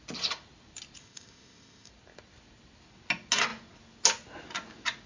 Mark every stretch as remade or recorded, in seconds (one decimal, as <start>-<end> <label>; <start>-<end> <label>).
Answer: 0.0-1.0 recorded; 1.0-1.9 remade; 1.9-5.1 recorded